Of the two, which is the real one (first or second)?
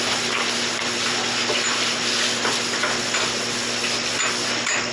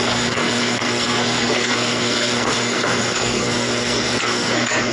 first